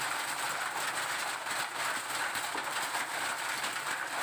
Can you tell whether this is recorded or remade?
recorded